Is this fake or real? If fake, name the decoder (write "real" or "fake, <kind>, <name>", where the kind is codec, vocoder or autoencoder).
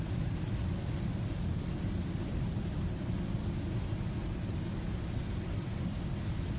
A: real